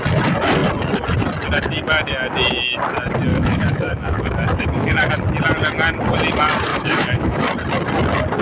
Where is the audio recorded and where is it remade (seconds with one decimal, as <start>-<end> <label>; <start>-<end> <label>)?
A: 0.0-3.3 recorded; 3.3-5.1 remade; 5.1-6.7 recorded; 6.7-7.4 remade; 7.4-8.4 recorded